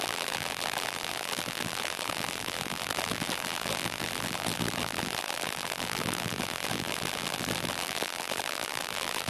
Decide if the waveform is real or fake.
fake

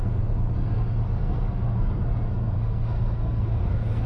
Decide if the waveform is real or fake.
fake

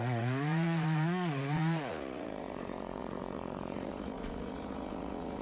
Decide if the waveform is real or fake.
fake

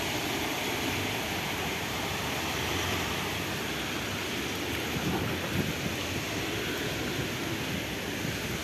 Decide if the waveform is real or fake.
real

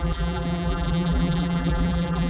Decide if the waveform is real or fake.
fake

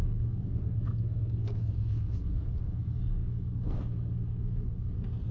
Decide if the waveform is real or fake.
fake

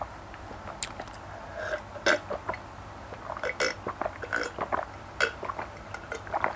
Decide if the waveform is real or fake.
real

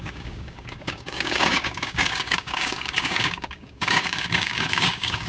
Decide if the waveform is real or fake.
fake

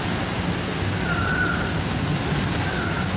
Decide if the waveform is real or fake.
real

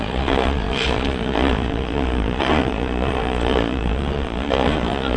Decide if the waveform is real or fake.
fake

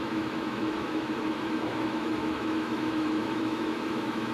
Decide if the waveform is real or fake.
fake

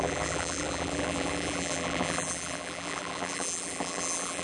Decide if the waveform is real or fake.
fake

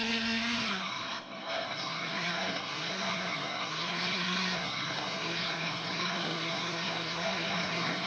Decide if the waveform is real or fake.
fake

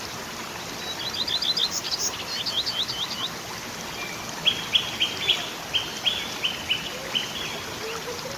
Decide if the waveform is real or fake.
real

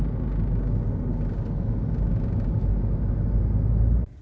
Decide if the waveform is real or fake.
real